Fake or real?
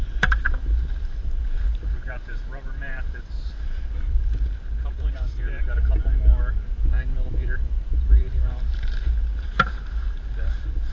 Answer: fake